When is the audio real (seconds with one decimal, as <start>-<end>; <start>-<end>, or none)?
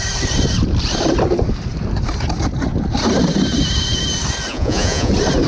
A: 0.0-4.5; 5.1-5.5